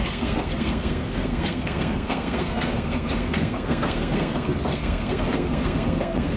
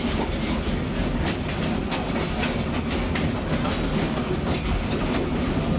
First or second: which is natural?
second